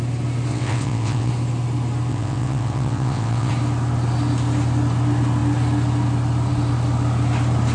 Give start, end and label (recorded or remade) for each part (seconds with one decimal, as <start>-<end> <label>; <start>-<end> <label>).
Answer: 0.0-0.5 recorded; 0.5-1.3 remade; 1.3-2.1 recorded; 2.1-3.5 remade; 3.5-7.7 recorded

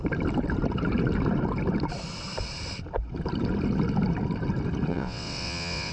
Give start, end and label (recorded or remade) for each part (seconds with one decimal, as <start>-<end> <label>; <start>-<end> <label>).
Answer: 0.0-4.9 recorded; 4.9-5.9 remade

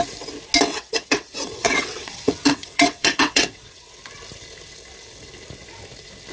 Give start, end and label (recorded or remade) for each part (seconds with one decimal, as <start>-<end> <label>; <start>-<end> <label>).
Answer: 0.0-0.7 recorded; 0.7-4.0 remade; 4.0-6.3 recorded

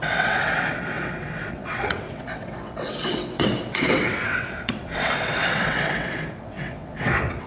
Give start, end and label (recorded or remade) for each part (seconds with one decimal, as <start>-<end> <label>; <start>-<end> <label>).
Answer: 0.0-7.5 remade